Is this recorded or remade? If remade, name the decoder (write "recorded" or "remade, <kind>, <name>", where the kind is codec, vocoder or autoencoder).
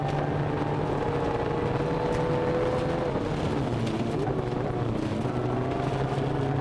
recorded